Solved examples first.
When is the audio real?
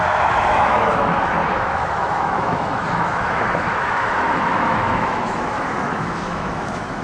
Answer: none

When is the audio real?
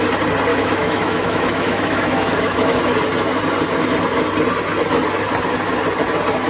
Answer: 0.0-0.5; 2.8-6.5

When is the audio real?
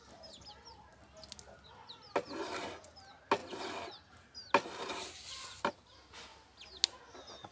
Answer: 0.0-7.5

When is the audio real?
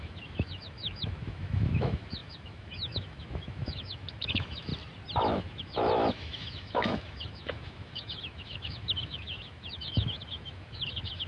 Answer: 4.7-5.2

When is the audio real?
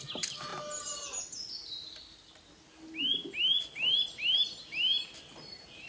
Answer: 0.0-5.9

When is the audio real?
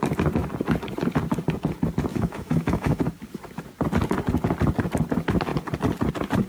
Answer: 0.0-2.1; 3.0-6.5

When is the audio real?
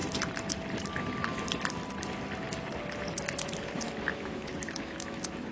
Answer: 0.0-4.1